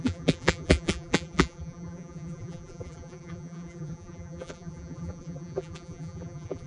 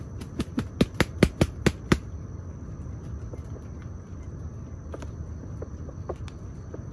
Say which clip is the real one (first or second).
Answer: second